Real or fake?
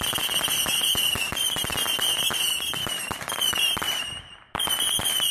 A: real